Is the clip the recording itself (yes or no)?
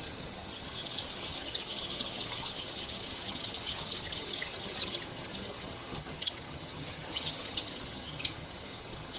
no